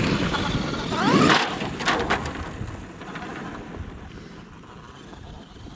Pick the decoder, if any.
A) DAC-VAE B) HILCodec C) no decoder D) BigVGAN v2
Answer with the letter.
C